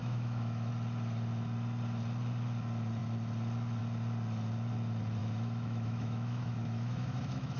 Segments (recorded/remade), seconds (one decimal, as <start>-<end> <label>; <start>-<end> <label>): 0.0-0.7 remade; 0.7-5.2 recorded; 5.2-7.6 remade